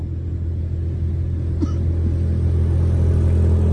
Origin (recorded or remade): recorded